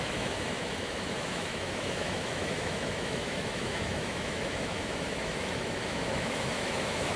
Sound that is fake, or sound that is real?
fake